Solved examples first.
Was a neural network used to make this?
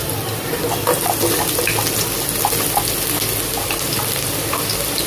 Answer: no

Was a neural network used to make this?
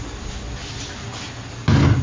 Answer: no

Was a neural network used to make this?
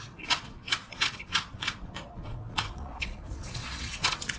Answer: yes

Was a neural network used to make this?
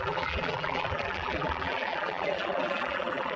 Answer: yes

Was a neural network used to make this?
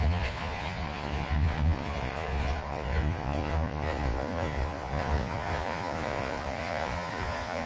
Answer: yes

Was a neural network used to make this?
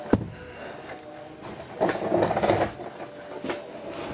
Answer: no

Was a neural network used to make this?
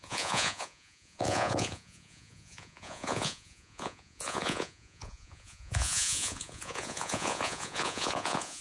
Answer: yes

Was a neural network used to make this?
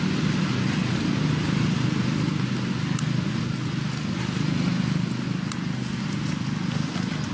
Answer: no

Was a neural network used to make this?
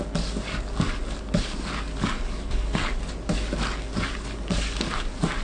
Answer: yes